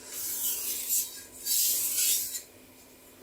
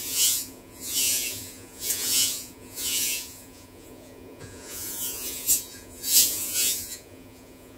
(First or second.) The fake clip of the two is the second